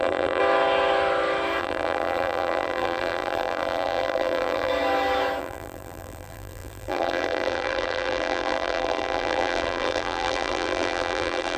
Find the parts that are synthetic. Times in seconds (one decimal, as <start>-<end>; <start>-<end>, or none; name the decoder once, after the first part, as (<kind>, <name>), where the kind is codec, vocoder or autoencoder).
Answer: 0.0-0.4 (vocoder, BigVGAN v2); 1.6-4.7; 5.4-11.6